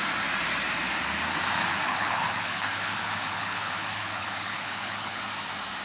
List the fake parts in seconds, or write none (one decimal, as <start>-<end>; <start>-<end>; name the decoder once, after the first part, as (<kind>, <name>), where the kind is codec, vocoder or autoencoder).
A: 1.7-5.2 (codec, HILCodec)